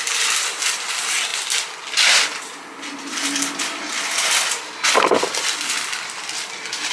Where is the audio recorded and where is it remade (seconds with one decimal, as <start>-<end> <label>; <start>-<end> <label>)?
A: 0.0-6.9 recorded